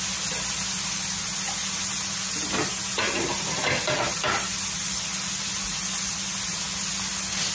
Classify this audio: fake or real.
real